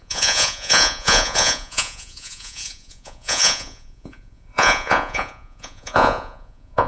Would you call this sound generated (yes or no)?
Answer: yes